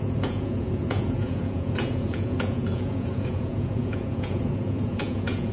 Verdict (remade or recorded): remade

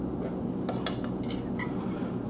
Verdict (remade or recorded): recorded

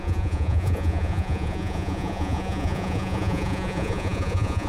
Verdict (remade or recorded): remade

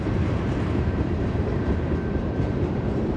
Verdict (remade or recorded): remade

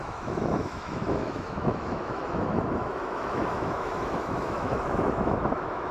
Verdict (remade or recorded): remade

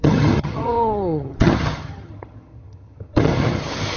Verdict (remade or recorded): remade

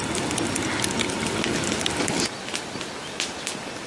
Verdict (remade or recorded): recorded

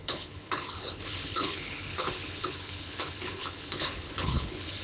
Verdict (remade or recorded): remade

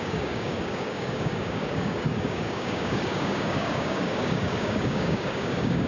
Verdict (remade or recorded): remade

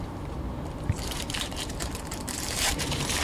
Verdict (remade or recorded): remade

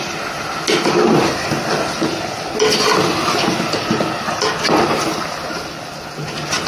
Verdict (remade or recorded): recorded